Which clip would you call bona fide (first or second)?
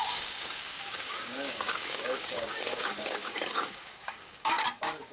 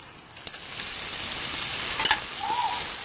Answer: second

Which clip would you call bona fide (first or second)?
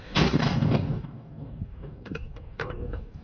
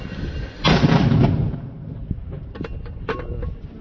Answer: second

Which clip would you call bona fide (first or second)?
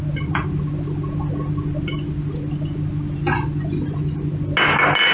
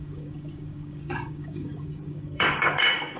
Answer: first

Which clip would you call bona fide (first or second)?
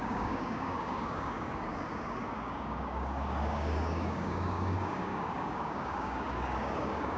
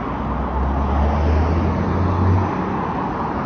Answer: second